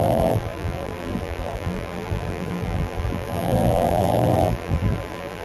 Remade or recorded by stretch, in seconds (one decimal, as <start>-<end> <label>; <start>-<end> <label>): 0.0-5.4 remade

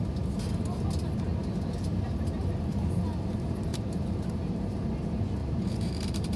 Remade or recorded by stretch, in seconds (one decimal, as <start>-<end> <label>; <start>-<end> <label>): 0.0-3.7 recorded; 3.7-4.8 remade; 4.8-5.4 recorded; 5.4-6.4 remade

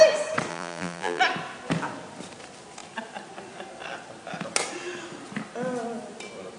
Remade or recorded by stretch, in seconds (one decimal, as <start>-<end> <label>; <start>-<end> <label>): 0.0-0.5 recorded; 0.5-1.2 remade; 1.2-6.6 recorded

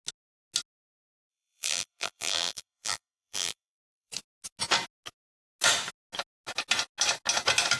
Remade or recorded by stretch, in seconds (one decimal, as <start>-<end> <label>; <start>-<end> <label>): 0.0-1.3 recorded; 1.3-4.1 remade; 4.1-7.8 recorded

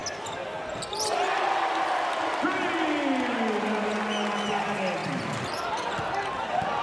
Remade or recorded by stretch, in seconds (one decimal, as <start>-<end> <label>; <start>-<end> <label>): 0.0-5.0 recorded; 5.0-5.7 remade; 5.7-6.8 recorded